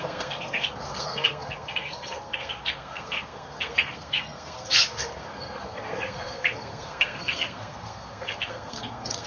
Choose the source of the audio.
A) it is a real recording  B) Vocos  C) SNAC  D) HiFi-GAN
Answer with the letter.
C